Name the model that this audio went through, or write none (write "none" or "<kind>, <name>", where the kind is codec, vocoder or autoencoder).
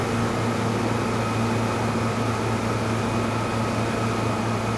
none